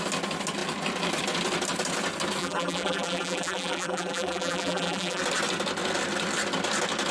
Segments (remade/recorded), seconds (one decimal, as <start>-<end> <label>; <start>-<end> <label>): 0.0-2.4 recorded; 2.4-5.2 remade; 5.2-7.1 recorded